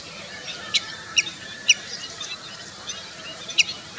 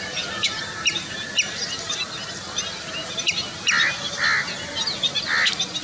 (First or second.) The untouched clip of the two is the second